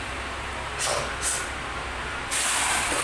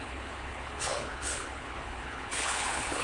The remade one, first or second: second